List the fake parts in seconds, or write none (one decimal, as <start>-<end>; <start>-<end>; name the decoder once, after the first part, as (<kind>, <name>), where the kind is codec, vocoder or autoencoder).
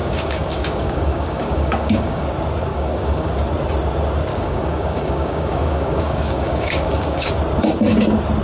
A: 0.0-2.3 (codec, DAC); 2.7-3.3; 4.3-7.3